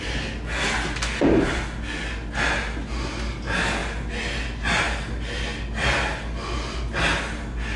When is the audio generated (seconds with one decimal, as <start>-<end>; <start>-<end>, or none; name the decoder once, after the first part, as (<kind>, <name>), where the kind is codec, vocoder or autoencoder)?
none